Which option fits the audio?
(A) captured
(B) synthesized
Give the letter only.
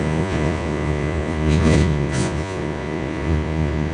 B